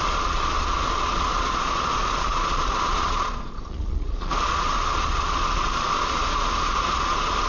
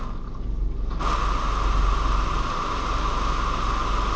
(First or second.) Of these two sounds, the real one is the second